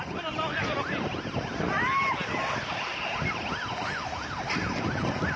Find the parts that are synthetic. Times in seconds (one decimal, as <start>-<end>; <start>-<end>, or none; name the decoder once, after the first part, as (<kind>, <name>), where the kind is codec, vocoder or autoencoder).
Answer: none